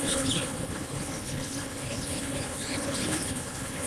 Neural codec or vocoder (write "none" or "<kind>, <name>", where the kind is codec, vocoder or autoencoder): codec, HILCodec